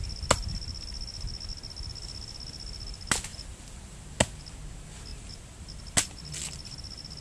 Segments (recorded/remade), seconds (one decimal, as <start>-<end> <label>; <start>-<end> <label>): 0.0-3.3 recorded; 3.3-4.1 remade; 4.1-5.1 recorded; 5.1-5.8 remade; 5.8-7.2 recorded